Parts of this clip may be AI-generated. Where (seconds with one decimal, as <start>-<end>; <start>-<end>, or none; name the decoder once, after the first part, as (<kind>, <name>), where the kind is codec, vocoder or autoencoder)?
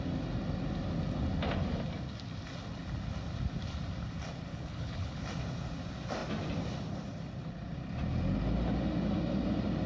4.5-5.2 (codec, HILCodec)